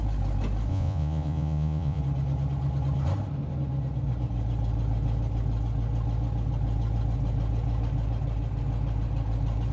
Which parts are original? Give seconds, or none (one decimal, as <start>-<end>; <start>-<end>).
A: 0.0-0.7; 2.0-9.7

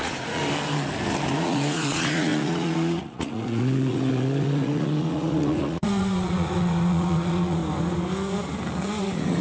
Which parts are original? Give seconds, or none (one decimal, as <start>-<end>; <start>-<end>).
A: 0.4-1.3; 7.6-9.0

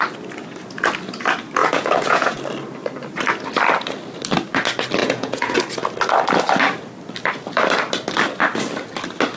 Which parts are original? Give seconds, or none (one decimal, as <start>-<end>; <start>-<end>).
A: 0.0-1.6; 2.4-5.0; 5.6-9.4